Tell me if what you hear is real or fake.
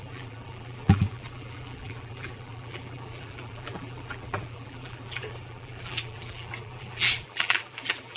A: fake